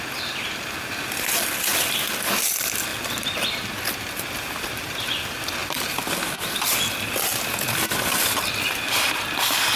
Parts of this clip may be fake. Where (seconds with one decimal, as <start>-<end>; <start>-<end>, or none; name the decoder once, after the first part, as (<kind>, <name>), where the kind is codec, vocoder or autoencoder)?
none